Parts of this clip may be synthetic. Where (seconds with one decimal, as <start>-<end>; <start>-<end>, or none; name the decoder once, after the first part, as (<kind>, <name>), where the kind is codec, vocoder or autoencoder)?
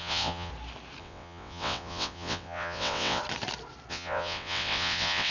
0.0-0.5 (vocoder, WaveNeXt); 1.0-3.2; 3.9-5.3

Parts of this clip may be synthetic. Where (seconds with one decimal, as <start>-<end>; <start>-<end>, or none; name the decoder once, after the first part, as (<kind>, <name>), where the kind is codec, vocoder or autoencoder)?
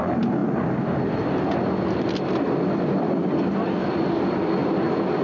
none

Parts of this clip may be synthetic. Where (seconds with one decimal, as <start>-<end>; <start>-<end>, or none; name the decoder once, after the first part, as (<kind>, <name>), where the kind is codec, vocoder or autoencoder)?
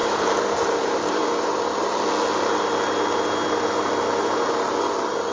0.0-1.2 (vocoder, BigVGAN v2)